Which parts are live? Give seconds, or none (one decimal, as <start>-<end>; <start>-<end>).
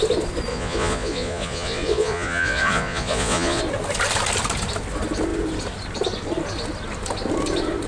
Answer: 0.0-0.5; 3.6-7.9